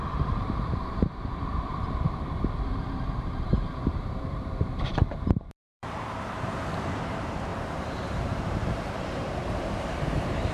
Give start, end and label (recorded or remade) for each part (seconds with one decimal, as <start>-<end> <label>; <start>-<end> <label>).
0.0-7.5 remade; 7.5-8.1 recorded; 8.1-10.5 remade